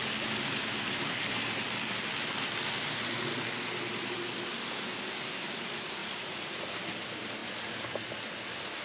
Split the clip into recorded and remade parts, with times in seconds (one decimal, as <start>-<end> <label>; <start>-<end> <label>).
0.0-6.0 recorded; 6.0-6.6 remade; 6.6-8.8 recorded